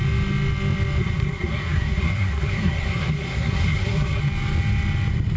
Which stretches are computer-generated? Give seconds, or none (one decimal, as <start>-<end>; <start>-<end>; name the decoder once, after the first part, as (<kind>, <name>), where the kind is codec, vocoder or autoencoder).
1.0-4.2 (codec, SNAC)